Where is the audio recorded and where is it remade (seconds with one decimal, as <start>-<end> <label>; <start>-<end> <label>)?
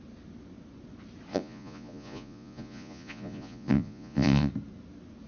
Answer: 0.0-1.3 recorded; 1.3-4.5 remade; 4.5-5.3 recorded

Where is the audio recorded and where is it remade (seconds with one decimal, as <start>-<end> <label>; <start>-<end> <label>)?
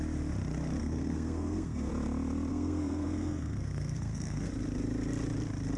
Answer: 0.0-0.8 recorded; 0.8-1.9 remade; 1.9-2.5 recorded; 2.5-4.5 remade; 4.5-5.8 recorded